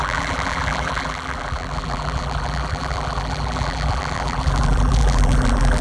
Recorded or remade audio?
remade